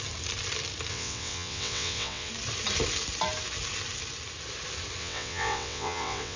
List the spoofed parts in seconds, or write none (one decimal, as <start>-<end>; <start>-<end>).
0.9-2.3; 5.0-6.4